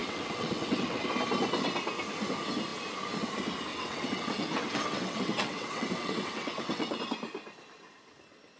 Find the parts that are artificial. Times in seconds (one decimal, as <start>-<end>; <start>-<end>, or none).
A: 0.0-1.0; 3.7-7.0